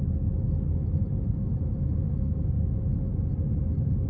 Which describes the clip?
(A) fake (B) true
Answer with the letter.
B